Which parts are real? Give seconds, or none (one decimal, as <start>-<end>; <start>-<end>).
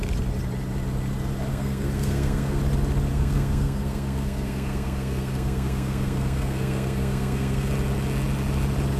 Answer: 0.0-1.5; 2.6-3.1; 7.7-9.0